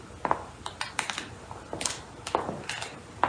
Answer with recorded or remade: recorded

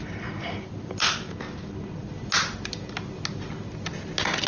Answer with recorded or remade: recorded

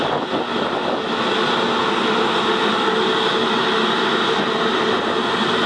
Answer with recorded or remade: recorded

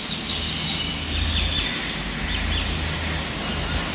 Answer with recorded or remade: recorded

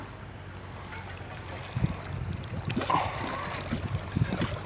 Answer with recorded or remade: recorded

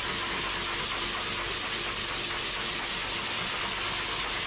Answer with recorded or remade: recorded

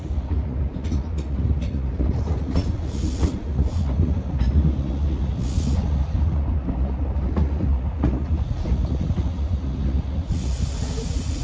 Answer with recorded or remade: remade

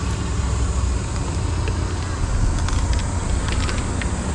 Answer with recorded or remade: recorded